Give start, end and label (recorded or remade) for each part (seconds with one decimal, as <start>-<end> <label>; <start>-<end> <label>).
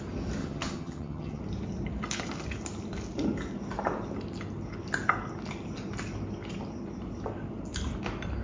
0.0-0.4 recorded; 0.4-1.4 remade; 1.4-8.4 recorded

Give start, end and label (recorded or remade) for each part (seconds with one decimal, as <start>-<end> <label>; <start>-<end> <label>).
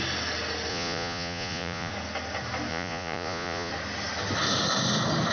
0.0-0.7 recorded; 0.7-1.9 remade; 1.9-2.7 recorded; 2.7-3.7 remade; 3.7-5.3 recorded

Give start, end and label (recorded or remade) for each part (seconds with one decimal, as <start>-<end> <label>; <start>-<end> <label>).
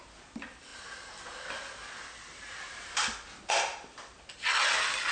0.0-5.1 recorded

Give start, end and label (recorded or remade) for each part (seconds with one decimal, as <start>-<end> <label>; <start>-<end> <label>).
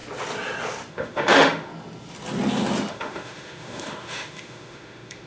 0.0-0.9 recorded; 0.9-1.7 remade; 1.7-2.9 recorded; 2.9-5.3 remade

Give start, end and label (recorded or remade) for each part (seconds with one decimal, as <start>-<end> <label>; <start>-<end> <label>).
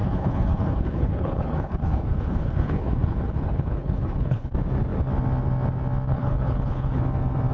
0.0-4.5 remade; 4.5-6.1 recorded; 6.1-7.0 remade; 7.0-7.5 recorded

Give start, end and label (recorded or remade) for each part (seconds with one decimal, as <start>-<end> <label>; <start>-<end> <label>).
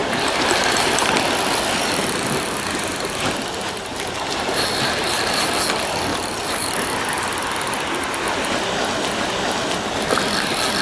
0.0-1.1 remade; 1.1-1.8 recorded; 1.8-5.5 remade; 5.5-6.1 recorded; 6.1-7.0 remade; 7.0-10.8 recorded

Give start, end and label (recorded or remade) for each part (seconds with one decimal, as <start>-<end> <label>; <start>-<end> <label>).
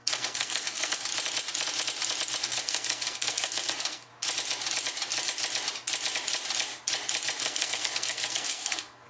0.0-1.1 remade; 1.1-2.4 recorded; 2.4-4.1 remade; 4.1-7.4 recorded; 7.4-9.1 remade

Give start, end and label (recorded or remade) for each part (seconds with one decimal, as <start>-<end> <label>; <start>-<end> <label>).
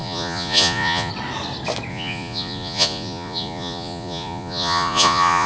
0.0-1.1 remade; 1.1-1.9 recorded; 1.9-5.5 remade